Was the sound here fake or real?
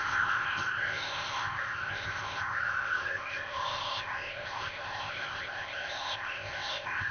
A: fake